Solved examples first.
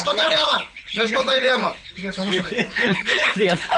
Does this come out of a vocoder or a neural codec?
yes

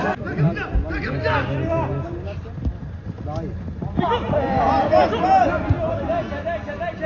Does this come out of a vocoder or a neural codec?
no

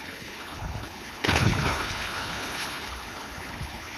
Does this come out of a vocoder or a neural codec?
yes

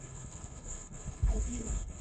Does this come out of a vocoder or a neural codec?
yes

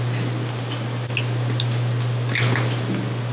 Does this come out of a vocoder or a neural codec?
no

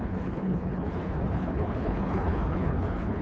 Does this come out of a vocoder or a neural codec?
yes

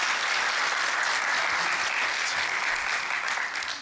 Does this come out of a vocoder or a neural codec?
no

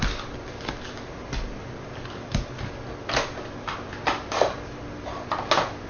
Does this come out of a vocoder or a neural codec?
no